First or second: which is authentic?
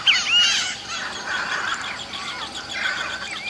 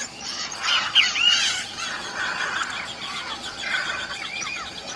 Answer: first